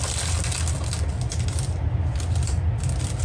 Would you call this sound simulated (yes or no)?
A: no